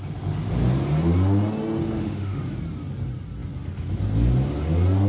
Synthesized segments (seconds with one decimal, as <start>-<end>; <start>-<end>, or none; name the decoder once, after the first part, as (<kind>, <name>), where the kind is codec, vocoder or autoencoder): 1.8-2.4 (autoencoder, DAC-VAE)